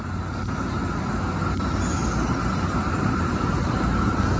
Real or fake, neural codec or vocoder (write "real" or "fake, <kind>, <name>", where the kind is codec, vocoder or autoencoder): real